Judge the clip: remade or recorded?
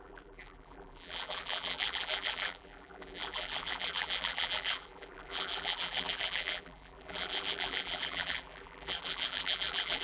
remade